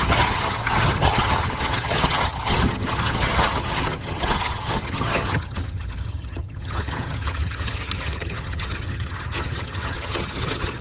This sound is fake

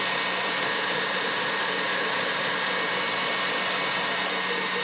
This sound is real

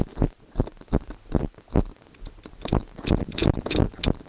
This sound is real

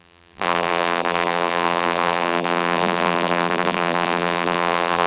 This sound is fake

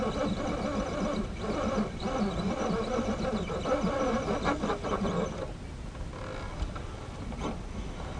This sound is real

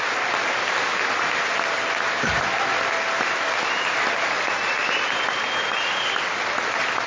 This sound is real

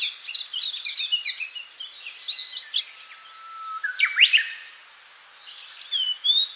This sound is real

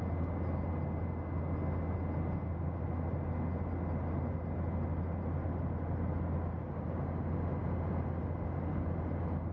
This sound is real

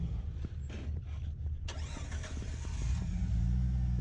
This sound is real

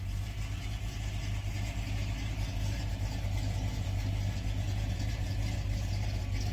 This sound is real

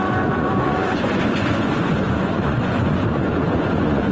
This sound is fake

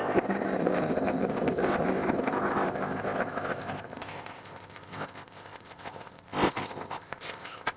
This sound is fake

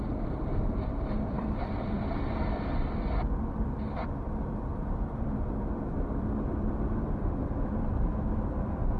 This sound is fake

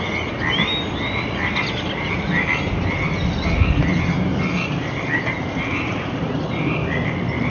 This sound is real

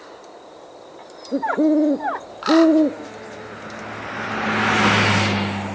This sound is real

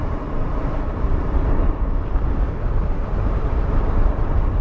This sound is fake